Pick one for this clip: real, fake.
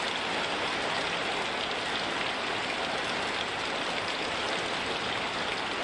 real